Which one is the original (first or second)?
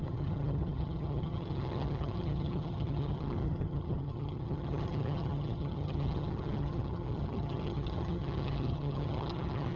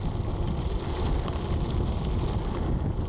second